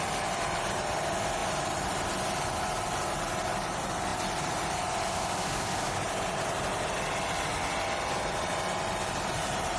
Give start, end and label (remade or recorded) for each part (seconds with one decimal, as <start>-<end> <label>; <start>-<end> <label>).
0.0-1.4 recorded; 1.4-3.3 remade; 3.3-9.8 recorded